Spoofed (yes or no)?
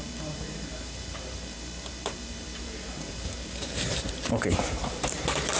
yes